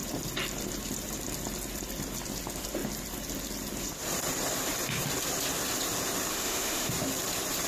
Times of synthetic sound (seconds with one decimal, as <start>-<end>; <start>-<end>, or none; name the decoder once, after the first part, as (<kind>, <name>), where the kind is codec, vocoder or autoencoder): 6.3-6.9 (autoencoder, DAC-VAE)